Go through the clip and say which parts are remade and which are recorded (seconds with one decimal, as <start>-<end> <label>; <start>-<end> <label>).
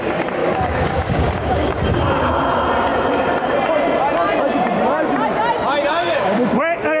0.0-0.4 recorded; 0.4-1.8 remade; 1.8-5.9 recorded; 5.9-6.5 remade; 6.5-7.0 recorded